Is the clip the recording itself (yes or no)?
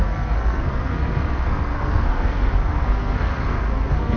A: no